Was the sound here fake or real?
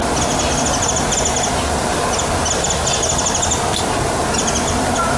real